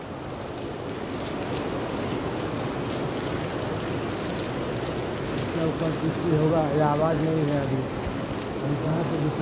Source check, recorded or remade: recorded